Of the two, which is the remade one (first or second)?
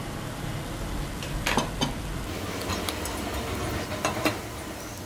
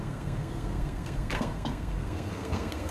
second